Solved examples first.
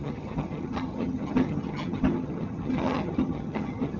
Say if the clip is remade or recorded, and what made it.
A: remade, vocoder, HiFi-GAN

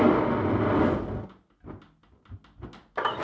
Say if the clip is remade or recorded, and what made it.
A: recorded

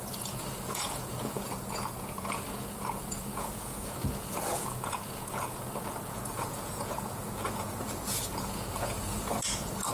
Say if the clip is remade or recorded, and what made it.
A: remade, vocoder, Vocos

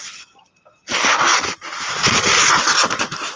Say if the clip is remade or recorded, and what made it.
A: recorded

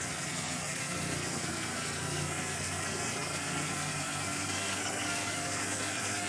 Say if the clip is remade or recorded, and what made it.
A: remade, codec, SNAC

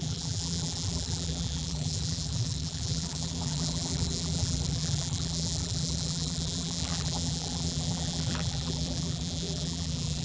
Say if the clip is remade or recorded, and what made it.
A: remade, vocoder, BigVGAN v2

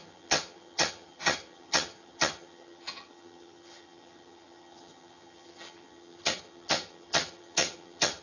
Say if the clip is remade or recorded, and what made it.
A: remade, vocoder, HiFi-GAN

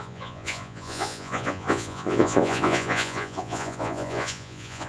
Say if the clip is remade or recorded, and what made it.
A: remade, vocoder, Vocos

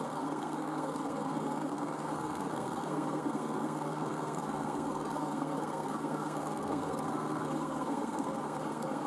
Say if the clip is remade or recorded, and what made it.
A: remade, codec, SNAC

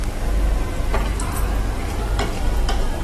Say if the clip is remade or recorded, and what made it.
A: recorded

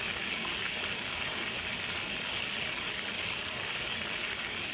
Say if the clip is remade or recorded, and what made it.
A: recorded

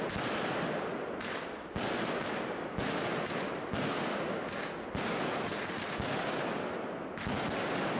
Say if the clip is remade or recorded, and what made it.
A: recorded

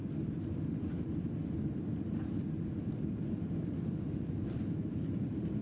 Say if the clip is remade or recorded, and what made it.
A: recorded